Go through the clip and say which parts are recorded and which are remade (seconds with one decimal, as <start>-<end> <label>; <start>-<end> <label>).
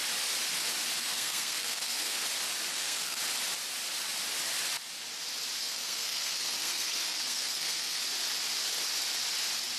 0.0-1.0 recorded; 1.0-2.2 remade; 2.2-2.7 recorded; 2.7-3.2 remade; 3.2-5.6 recorded; 5.6-8.0 remade; 8.0-9.8 recorded